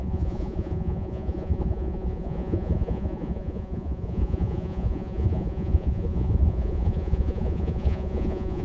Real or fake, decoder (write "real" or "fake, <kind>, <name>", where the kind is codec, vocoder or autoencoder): fake, vocoder, Vocos